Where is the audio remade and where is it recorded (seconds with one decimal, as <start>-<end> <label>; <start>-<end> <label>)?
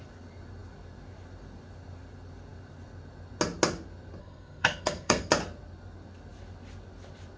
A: 0.0-4.2 recorded; 4.2-5.3 remade; 5.3-7.4 recorded